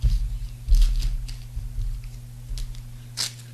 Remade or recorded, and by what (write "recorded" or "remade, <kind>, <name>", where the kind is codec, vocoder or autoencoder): recorded